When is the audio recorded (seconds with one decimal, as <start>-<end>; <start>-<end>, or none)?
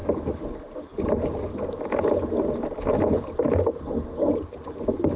0.0-5.2